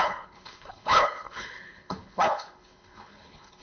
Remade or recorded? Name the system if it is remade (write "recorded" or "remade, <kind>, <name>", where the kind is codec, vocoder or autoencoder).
remade, codec, HILCodec